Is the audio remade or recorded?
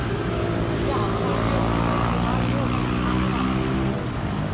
recorded